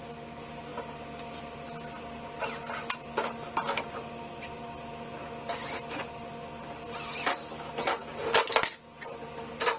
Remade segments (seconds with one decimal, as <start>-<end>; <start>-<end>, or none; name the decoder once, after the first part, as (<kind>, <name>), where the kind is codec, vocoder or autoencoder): none

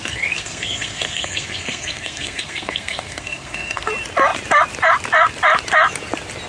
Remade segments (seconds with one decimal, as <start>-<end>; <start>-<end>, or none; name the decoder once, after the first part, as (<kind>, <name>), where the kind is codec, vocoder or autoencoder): 0.0-3.9 (codec, SNAC)

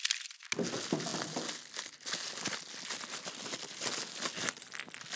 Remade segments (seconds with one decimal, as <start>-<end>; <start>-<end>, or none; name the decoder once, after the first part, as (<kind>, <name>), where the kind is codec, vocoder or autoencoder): none

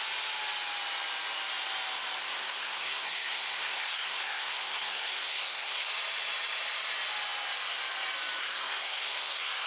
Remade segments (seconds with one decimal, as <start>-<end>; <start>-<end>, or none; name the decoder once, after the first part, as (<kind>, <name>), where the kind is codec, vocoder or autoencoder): 2.2-5.9 (codec, SNAC); 8.4-9.7

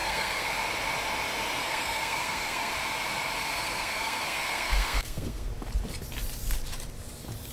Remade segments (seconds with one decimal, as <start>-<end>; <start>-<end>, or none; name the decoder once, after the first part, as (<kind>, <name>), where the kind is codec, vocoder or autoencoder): 0.0-0.5 (codec, SNAC); 1.6-2.7; 3.4-5.5

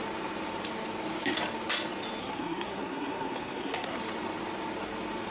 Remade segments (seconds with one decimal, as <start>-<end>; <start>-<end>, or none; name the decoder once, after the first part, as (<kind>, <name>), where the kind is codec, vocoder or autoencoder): 2.2-4.0 (codec, SNAC)